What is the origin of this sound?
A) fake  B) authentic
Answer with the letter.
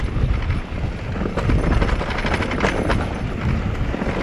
B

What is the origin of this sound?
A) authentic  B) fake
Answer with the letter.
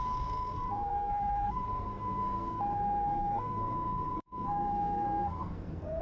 B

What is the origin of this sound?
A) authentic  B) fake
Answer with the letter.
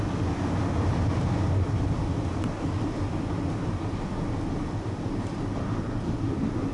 A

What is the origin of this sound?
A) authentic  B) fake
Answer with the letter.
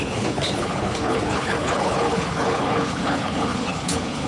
B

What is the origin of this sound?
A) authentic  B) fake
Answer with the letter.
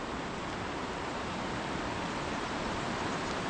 A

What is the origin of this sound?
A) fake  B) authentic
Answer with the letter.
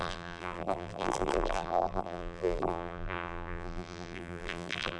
A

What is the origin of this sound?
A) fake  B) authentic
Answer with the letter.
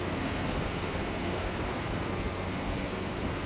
A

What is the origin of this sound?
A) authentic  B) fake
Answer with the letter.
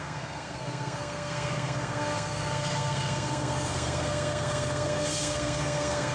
B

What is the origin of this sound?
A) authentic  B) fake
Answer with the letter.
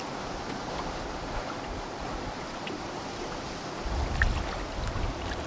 A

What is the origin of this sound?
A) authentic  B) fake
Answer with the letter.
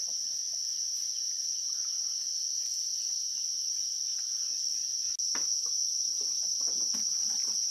A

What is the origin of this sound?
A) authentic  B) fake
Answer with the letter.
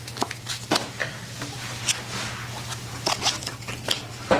A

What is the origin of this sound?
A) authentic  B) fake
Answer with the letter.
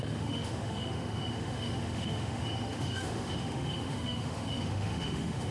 B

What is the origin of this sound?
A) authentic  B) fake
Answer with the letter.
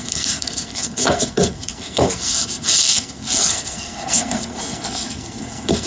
B